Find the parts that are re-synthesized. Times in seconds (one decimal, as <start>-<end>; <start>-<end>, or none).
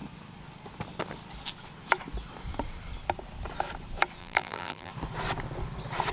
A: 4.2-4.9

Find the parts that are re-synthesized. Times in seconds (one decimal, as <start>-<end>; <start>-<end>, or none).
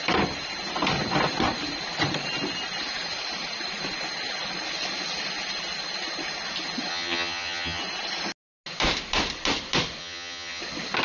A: 6.9-7.8; 10.0-10.6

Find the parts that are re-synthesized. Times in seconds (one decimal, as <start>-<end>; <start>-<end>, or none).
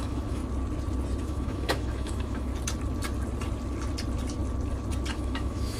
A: 0.0-0.4; 1.2-2.5; 5.1-5.8